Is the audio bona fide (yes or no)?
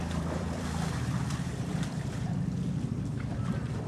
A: no